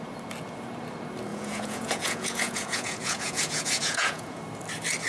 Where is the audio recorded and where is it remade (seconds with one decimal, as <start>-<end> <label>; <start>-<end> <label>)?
0.0-1.3 recorded; 1.3-4.4 remade; 4.4-5.1 recorded